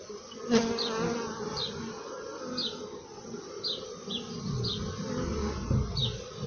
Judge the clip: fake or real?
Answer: real